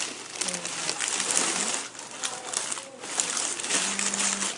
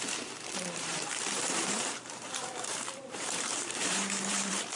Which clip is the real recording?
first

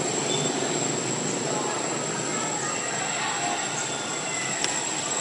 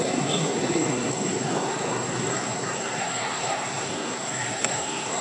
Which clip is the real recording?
first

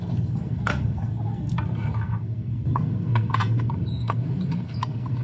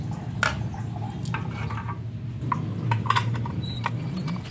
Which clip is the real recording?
second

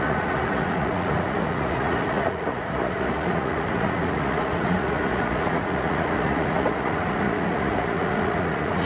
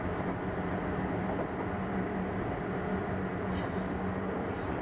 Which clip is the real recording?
second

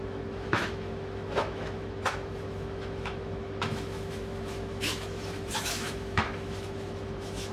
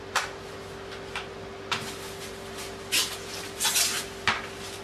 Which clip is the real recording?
second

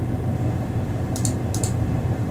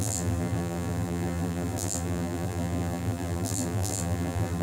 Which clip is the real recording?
first